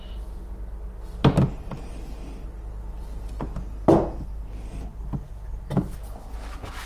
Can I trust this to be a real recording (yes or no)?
yes